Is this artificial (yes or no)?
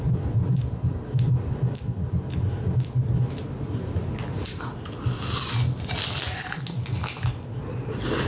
no